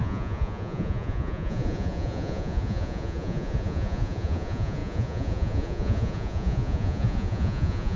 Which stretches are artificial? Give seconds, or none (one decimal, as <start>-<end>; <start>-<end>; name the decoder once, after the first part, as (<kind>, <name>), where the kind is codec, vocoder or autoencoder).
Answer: 0.0-8.0 (vocoder, Vocos)